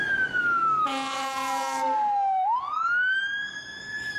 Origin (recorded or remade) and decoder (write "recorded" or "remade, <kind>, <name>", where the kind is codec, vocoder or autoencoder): remade, codec, DAC